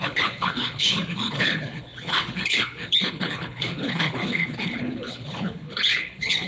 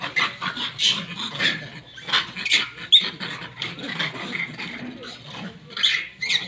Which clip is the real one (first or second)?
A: second